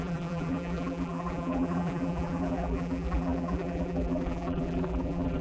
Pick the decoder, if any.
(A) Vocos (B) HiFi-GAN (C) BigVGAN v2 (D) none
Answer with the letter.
C